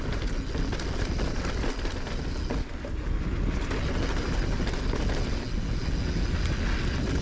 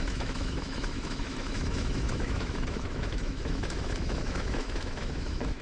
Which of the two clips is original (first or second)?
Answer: first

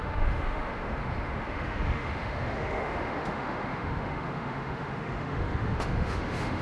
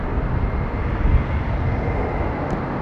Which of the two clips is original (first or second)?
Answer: second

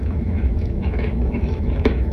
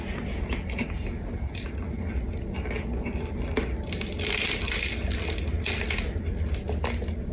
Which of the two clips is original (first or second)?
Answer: second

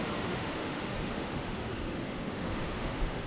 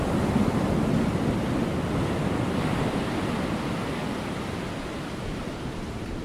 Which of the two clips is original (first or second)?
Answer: second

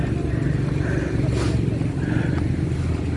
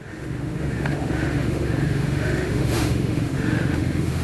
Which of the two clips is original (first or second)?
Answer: first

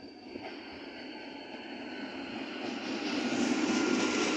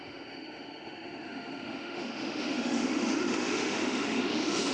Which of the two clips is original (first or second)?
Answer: first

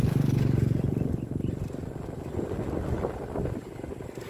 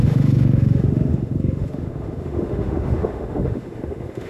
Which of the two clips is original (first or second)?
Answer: first